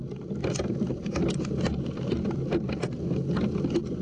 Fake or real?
real